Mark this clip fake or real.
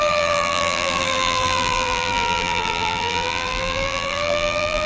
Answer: fake